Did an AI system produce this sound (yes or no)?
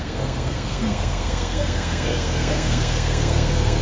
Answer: yes